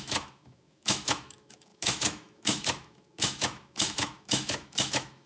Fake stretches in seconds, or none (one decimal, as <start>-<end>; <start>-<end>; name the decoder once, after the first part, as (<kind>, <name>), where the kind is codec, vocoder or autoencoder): 0.0-5.3 (autoencoder, DAC-VAE)